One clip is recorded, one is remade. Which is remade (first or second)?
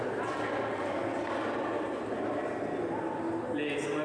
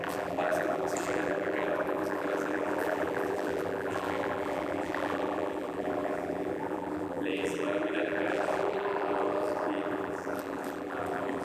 second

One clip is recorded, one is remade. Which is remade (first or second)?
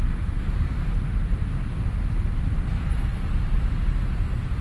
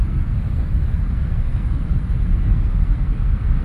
second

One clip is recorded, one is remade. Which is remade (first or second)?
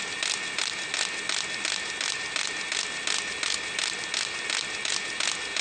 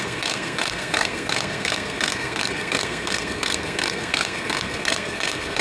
second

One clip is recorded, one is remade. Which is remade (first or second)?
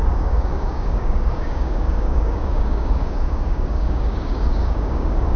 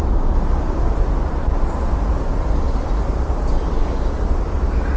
first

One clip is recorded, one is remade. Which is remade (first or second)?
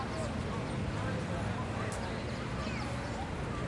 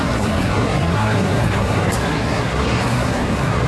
second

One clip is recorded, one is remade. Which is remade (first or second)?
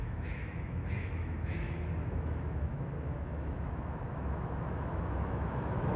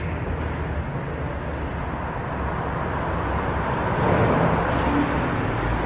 first